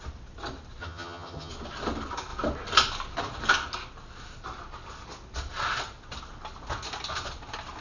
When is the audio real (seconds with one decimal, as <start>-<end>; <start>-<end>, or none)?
0.0-0.8; 1.5-7.8